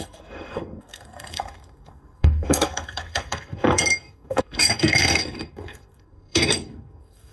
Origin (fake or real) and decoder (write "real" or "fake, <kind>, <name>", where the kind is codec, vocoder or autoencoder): fake, codec, SNAC